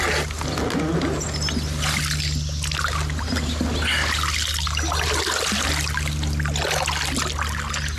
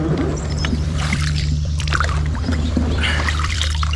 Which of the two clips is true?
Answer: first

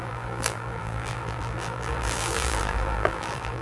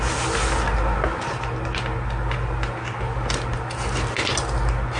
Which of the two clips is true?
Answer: second